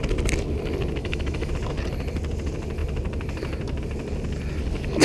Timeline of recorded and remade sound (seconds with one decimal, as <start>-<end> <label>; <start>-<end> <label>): 0.0-1.0 recorded; 1.0-1.5 remade; 1.5-5.0 recorded